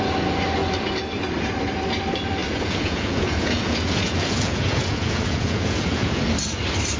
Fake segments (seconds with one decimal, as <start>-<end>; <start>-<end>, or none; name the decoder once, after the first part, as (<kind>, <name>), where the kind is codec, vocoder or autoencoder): 2.4-6.2 (vocoder, Vocos)